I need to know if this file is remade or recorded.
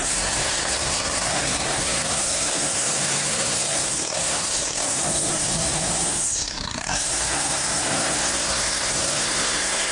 remade